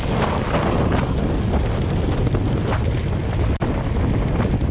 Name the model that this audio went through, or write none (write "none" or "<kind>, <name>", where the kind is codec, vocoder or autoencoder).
none